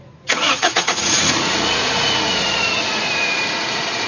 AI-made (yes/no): yes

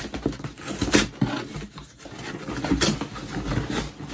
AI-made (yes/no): no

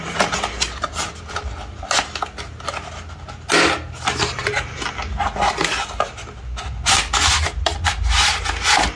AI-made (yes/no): no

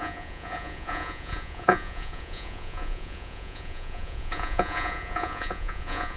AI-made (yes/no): yes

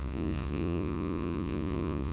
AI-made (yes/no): yes